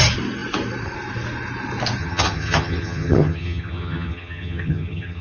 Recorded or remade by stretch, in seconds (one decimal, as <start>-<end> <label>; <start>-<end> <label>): 0.0-2.0 recorded; 2.0-5.2 remade

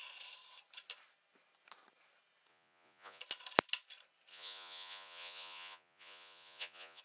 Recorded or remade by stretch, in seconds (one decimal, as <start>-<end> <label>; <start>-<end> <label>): 0.0-2.5 recorded; 2.5-3.2 remade; 3.2-4.3 recorded; 4.3-7.0 remade

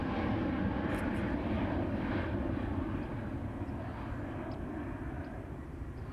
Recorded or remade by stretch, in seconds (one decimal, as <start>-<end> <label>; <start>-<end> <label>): 0.0-3.9 remade; 3.9-4.5 recorded; 4.5-6.1 remade

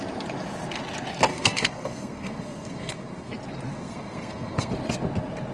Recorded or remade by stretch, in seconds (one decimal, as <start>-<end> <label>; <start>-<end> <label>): 0.0-1.3 recorded; 1.3-3.3 remade; 3.3-3.7 recorded; 3.7-4.7 remade; 4.7-5.5 recorded

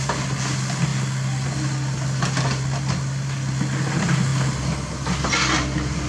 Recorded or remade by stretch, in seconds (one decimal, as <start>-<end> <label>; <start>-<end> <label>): 0.0-6.1 recorded

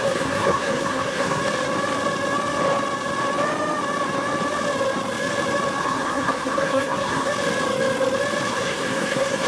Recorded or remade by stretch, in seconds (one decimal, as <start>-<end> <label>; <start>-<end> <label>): 0.0-1.4 remade; 1.4-5.8 recorded; 5.8-7.3 remade; 7.3-8.5 recorded; 8.5-9.5 remade